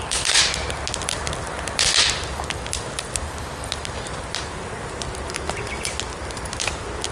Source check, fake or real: real